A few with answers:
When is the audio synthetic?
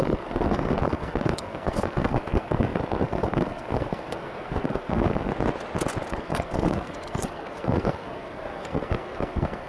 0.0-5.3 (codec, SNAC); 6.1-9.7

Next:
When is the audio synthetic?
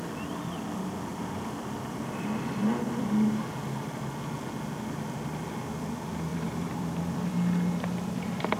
1.1-4.0 (vocoder, BigVGAN v2); 6.3-7.3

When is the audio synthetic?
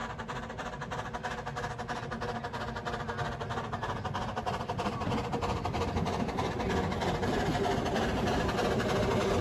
0.0-0.5 (vocoder, BigVGAN v2)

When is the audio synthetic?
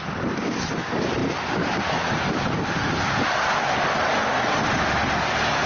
none